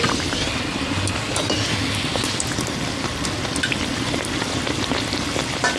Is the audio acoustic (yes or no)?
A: yes